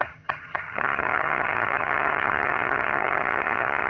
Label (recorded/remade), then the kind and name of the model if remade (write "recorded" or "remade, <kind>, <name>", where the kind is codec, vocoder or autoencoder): remade, vocoder, HiFi-GAN